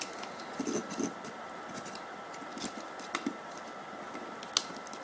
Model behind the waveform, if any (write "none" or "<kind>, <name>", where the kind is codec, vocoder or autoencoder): none